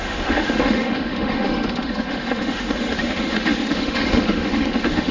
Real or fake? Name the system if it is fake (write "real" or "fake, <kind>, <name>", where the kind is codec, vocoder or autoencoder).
fake, autoencoder, DAC-VAE